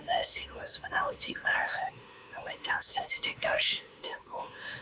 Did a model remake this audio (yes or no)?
yes